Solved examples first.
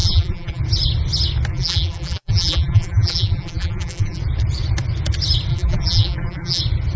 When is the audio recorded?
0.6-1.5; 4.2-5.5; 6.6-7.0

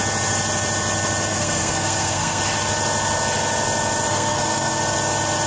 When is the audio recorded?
0.0-1.3; 2.4-4.1; 4.8-5.5

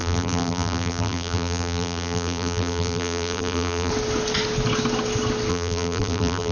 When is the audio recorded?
3.9-5.5